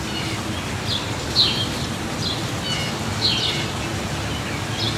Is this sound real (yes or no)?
yes